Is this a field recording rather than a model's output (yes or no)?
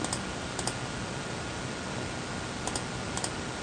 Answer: yes